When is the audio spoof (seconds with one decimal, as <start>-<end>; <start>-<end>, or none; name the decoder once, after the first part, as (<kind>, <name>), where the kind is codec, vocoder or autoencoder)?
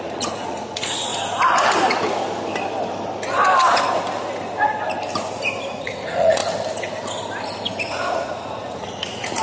0.0-1.1 (vocoder, Vocos); 5.7-6.4; 7.9-9.4